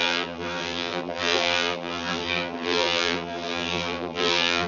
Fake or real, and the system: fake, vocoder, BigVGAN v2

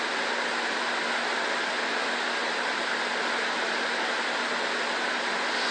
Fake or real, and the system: real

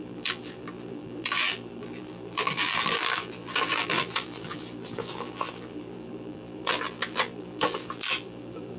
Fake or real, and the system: fake, vocoder, BigVGAN v2